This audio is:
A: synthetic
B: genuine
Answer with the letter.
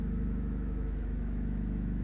A